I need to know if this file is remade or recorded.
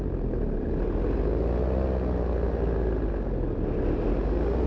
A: recorded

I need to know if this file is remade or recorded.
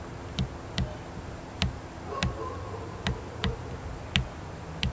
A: recorded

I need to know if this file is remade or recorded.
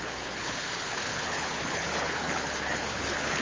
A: remade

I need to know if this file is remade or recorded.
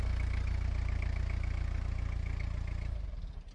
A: recorded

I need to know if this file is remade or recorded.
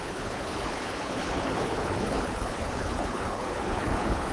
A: remade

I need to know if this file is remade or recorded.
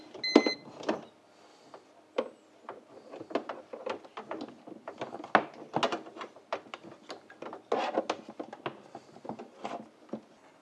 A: recorded